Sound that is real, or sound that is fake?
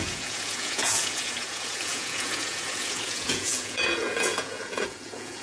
fake